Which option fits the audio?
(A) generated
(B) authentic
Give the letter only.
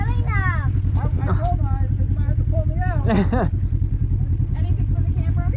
B